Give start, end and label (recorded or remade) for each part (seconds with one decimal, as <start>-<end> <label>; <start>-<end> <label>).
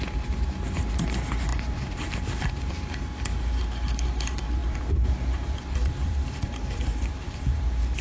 0.0-1.5 recorded; 1.5-2.7 remade; 2.7-4.6 recorded; 4.6-6.8 remade; 6.8-8.0 recorded